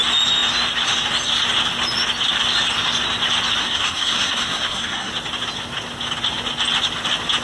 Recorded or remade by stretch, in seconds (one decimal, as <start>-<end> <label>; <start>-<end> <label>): 0.0-3.6 recorded; 3.6-5.1 remade; 5.1-7.4 recorded